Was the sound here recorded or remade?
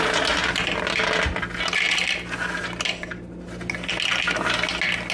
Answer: recorded